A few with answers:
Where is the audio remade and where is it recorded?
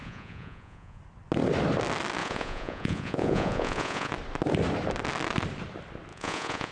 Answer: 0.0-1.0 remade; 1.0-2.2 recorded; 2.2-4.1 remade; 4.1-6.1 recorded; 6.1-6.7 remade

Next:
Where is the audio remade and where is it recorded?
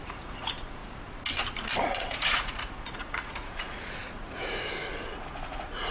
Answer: 0.0-0.8 remade; 0.8-1.9 recorded; 1.9-5.9 remade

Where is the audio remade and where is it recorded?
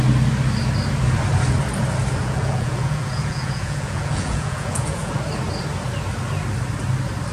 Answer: 0.0-2.2 recorded; 2.2-5.1 remade; 5.1-7.3 recorded